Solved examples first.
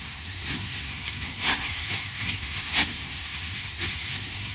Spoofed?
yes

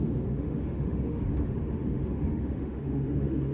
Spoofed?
yes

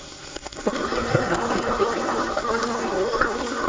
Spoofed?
yes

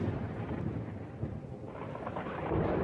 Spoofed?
yes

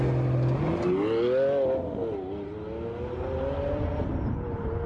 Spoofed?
no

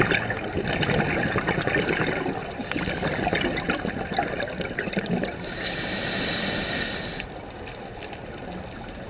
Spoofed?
no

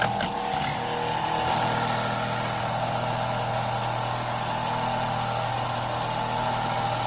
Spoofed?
no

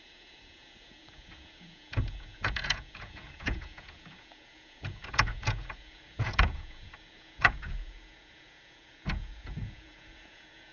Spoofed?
yes